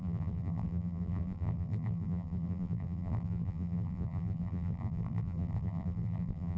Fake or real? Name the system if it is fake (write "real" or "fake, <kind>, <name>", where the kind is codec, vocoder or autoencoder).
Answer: fake, vocoder, BigVGAN v2